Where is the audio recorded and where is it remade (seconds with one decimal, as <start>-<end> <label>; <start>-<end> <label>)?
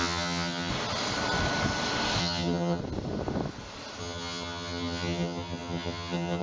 0.0-0.7 remade; 0.7-2.2 recorded; 2.2-2.8 remade; 2.8-4.0 recorded; 4.0-6.4 remade